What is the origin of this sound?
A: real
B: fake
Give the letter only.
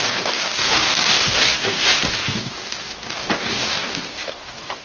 B